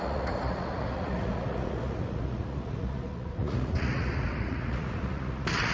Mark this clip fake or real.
fake